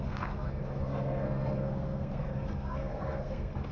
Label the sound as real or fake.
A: fake